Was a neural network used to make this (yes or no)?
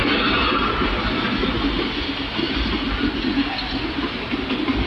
no